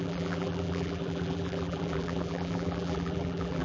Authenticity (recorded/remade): remade